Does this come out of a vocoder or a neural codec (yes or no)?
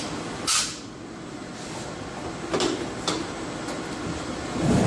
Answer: no